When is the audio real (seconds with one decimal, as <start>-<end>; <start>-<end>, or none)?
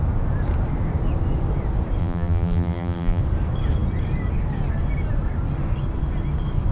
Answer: 0.0-2.0; 3.2-6.7